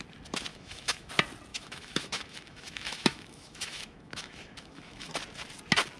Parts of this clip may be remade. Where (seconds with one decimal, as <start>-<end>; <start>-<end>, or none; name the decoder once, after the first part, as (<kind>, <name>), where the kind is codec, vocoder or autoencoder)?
0.5-1.1 (autoencoder, DAC-VAE); 1.5-5.1